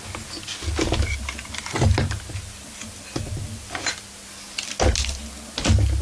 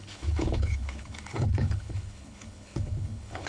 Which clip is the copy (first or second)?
second